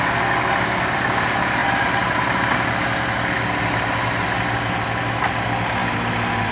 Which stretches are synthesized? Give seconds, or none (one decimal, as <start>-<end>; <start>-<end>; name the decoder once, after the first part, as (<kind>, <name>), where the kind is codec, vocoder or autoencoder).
none